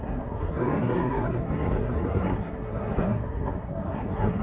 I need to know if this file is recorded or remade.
remade